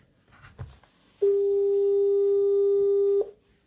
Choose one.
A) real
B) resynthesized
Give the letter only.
A